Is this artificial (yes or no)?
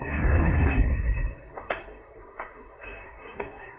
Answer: yes